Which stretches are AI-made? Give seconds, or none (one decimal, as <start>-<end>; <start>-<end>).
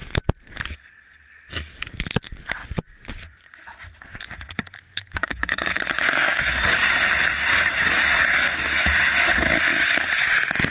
2.6-6.1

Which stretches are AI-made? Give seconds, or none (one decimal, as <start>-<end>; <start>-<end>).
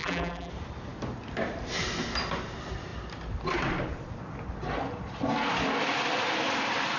0.0-0.5